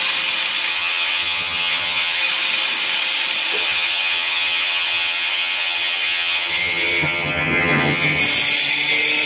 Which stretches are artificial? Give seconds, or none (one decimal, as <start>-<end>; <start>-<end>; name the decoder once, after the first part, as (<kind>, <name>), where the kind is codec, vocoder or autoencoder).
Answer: 0.7-2.2 (vocoder, HiFi-GAN); 3.6-8.2